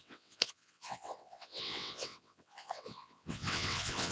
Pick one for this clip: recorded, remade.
remade